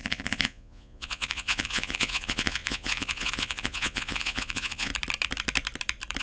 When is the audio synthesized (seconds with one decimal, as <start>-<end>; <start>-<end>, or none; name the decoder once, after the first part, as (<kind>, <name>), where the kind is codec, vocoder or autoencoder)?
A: 0.0-4.9 (vocoder, Vocos)